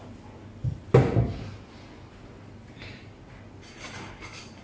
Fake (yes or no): no